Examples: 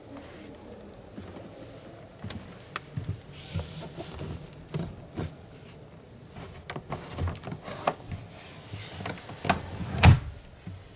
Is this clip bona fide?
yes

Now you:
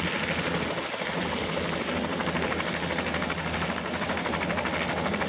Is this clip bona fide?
yes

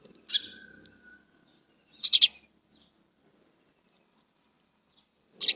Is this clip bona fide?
yes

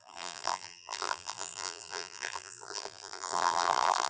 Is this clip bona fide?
no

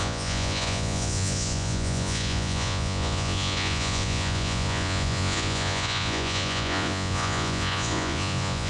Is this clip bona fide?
no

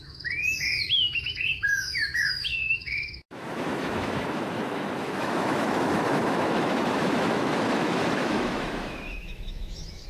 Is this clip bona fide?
no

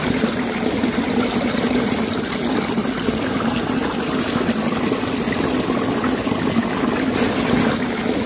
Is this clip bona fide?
yes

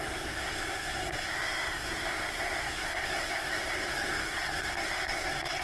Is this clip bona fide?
no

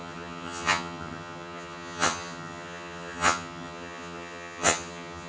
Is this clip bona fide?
no